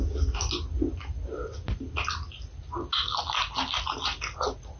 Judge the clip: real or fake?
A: real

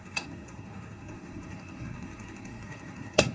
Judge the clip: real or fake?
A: fake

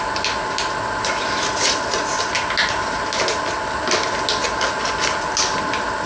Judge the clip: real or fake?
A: real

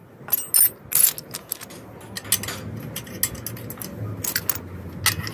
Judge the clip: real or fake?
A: real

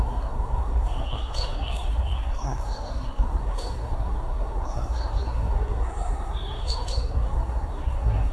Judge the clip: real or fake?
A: fake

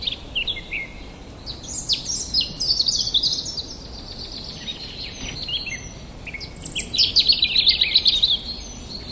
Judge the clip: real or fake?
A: real